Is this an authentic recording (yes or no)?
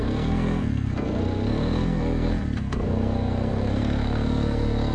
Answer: no